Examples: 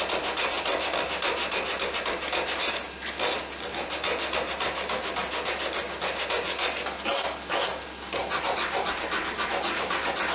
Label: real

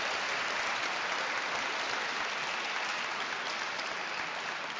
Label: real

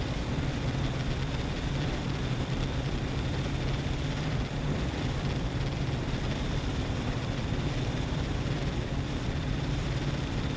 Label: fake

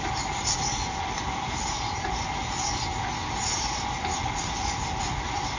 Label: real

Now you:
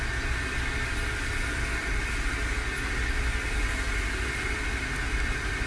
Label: real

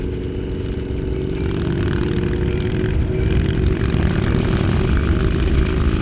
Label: real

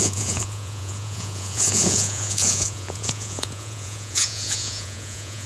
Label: fake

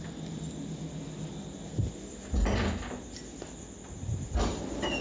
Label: real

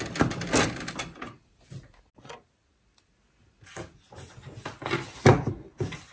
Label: real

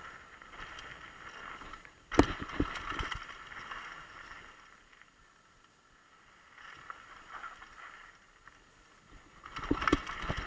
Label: real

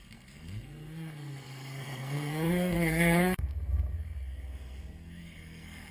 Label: fake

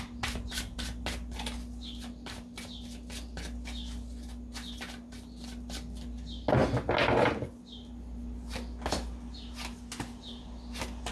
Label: real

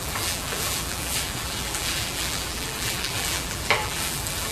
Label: fake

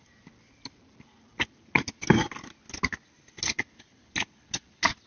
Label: real